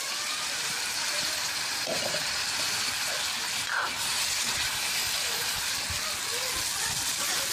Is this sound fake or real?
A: real